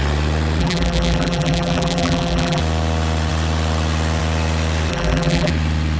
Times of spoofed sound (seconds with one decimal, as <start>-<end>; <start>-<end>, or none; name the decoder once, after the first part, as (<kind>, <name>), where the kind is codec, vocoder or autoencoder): 0.6-2.6 (vocoder, BigVGAN v2); 4.9-5.5